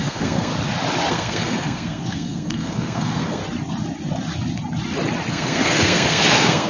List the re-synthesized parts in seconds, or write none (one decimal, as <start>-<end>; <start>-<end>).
0.0-0.5; 1.1-3.4; 5.3-6.7